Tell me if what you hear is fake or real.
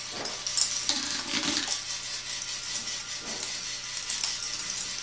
real